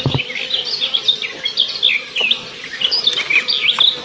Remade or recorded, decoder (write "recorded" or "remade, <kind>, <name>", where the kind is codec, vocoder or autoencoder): recorded